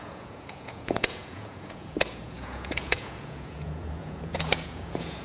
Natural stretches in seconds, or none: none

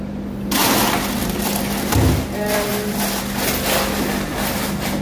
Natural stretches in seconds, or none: 0.0-5.0

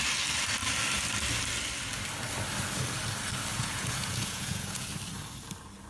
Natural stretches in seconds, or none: 0.0-3.5; 4.9-5.9

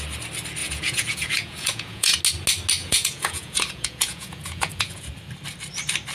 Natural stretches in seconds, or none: 0.0-0.6; 2.2-2.8; 5.1-6.1

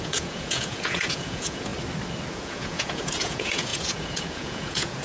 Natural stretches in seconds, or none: 1.7-2.3

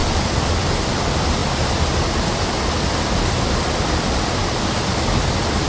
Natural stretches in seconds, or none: 0.0-5.7